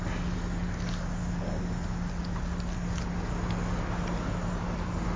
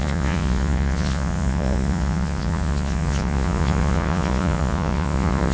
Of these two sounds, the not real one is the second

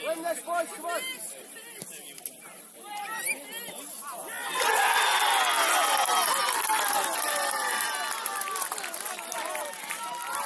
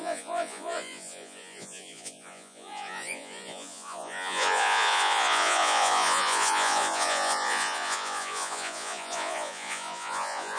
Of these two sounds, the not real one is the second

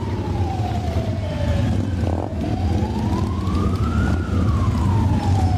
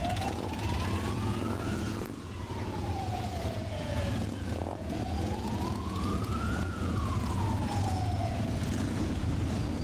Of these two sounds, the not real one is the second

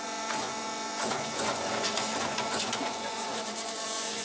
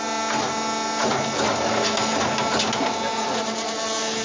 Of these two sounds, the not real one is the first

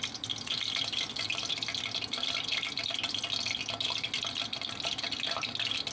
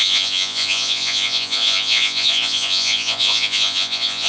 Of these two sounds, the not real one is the second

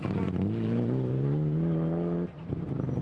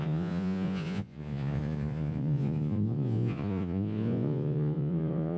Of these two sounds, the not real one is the second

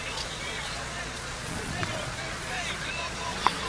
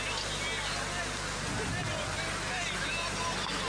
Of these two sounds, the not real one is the first